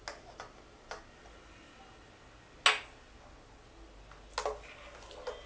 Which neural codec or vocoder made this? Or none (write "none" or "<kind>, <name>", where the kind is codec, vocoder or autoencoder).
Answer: none